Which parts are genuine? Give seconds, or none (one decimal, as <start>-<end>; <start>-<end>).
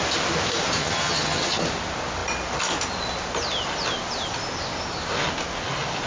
0.0-0.8; 1.6-6.1